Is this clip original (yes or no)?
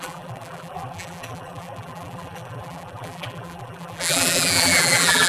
no